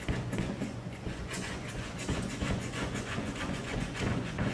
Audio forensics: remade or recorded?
remade